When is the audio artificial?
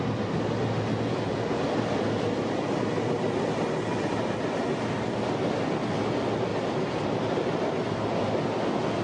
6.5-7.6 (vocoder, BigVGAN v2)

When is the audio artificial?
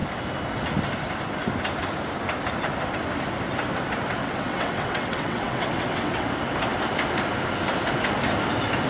4.2-6.3 (vocoder, WaveNeXt)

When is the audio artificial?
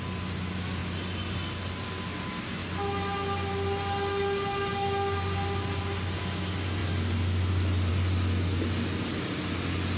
none